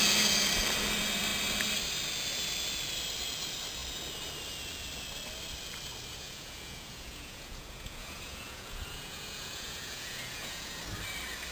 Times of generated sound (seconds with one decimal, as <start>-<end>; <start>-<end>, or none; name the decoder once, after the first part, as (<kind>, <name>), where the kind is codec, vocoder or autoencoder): 6.1-10.8 (vocoder, Vocos)